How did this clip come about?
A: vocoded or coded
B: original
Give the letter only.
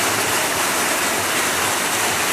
B